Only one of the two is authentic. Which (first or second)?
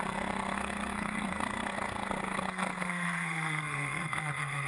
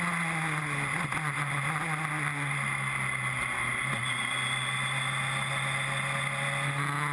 second